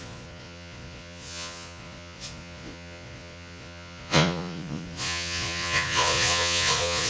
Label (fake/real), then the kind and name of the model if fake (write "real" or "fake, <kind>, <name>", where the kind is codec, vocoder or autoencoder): fake, vocoder, Vocos